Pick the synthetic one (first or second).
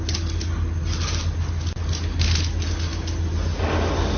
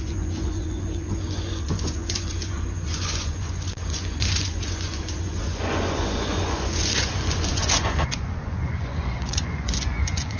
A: second